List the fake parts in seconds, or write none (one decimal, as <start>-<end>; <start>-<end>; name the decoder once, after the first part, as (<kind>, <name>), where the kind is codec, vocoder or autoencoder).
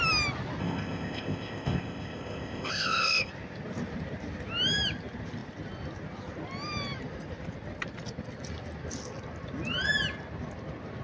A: 0.6-3.3 (codec, ZipCodec)